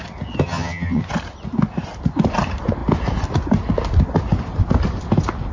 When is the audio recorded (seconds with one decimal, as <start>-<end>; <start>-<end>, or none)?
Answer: 0.0-0.4; 1.0-5.5